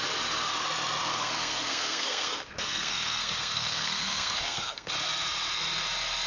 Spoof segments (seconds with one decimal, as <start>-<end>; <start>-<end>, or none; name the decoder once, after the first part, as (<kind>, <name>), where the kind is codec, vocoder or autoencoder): 1.1-4.9 (codec, SNAC)